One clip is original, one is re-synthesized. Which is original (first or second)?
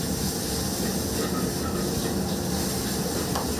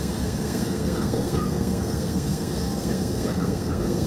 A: first